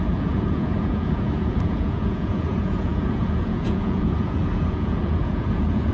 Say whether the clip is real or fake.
fake